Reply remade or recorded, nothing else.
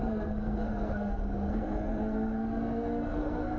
remade